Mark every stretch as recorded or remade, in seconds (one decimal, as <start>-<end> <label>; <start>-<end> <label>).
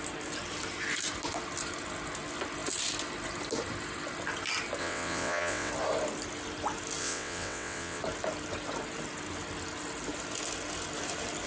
0.0-4.8 recorded; 4.8-5.7 remade; 5.7-7.0 recorded; 7.0-8.0 remade; 8.0-11.5 recorded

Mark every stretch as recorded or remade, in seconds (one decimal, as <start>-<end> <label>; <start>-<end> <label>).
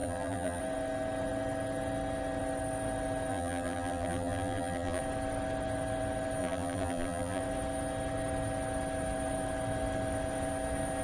0.0-0.6 remade; 0.6-3.3 recorded; 3.3-5.0 remade; 5.0-6.4 recorded; 6.4-7.4 remade; 7.4-11.0 recorded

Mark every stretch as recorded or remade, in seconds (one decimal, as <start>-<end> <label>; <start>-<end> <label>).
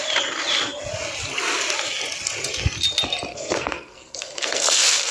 0.0-3.3 recorded; 3.3-5.1 remade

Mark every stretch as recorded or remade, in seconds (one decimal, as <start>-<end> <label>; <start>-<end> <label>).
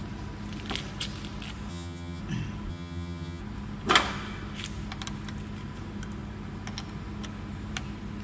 0.0-1.7 recorded; 1.7-2.2 remade; 2.2-2.7 recorded; 2.7-3.4 remade; 3.4-8.2 recorded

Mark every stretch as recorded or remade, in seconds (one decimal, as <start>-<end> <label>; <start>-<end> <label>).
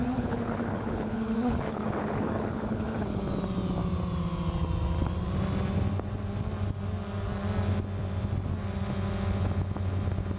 0.0-3.2 remade; 3.2-10.4 recorded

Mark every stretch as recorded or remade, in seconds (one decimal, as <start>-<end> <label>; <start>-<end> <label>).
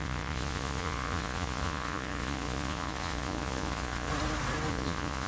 0.0-4.1 remade; 4.1-4.7 recorded; 4.7-5.3 remade